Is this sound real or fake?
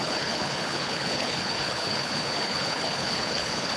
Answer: fake